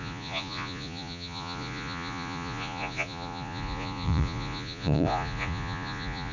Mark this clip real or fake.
fake